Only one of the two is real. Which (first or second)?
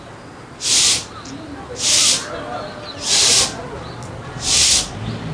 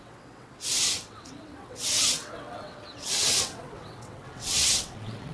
first